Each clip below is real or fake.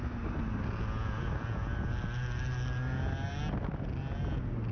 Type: real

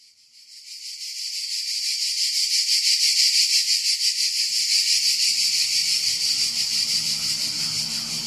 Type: real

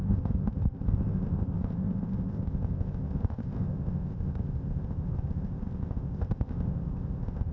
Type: fake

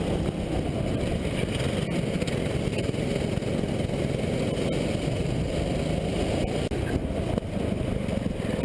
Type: real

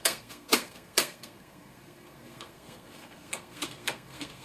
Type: fake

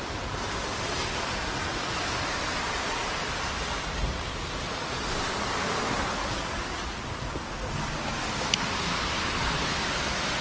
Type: real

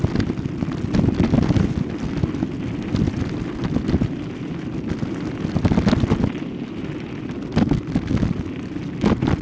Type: real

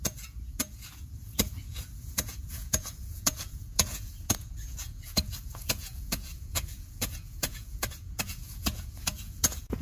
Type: fake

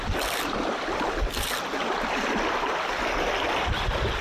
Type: real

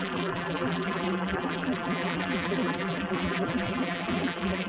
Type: fake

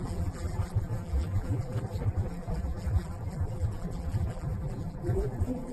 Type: fake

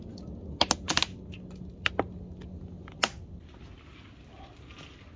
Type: real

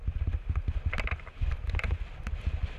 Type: real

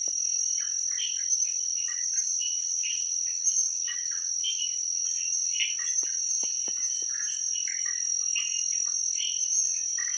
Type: real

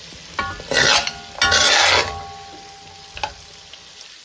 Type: real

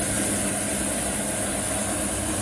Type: real